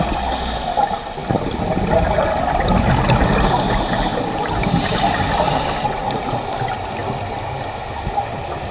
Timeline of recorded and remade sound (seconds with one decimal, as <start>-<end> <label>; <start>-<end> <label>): 0.0-8.7 recorded